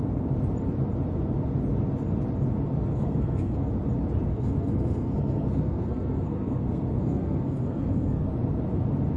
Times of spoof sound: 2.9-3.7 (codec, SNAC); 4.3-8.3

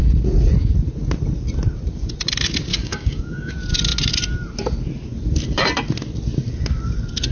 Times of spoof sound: 2.7-3.5 (codec, DAC)